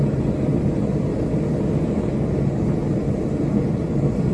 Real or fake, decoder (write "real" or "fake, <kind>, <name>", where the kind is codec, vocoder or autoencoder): real